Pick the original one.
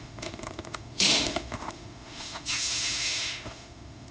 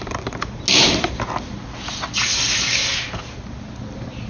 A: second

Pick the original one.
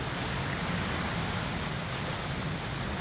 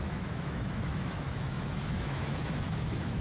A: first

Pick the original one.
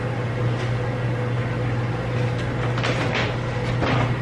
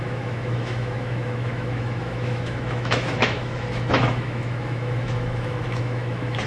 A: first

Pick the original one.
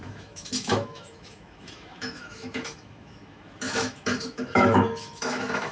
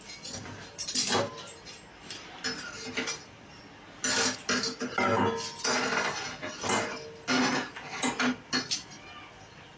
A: second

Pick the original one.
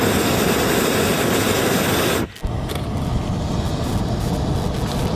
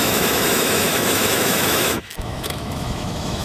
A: first